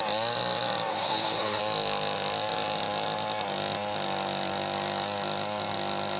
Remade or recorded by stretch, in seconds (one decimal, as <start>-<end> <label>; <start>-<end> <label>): 0.0-0.9 recorded; 0.9-1.6 remade; 1.6-6.2 recorded